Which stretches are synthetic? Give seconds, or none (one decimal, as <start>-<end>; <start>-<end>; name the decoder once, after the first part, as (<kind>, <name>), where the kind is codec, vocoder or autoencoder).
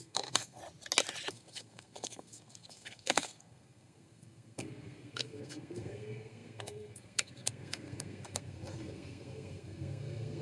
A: 0.0-0.6 (codec, SNAC); 1.3-10.4